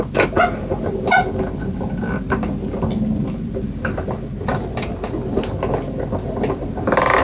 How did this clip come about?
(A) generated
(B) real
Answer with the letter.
B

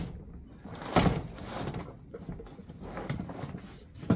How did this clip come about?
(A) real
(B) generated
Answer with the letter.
A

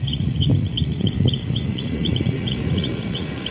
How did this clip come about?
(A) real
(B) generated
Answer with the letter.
B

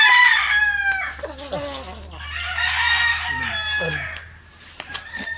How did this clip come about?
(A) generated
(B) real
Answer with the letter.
B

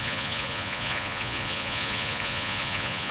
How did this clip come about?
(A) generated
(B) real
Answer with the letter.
A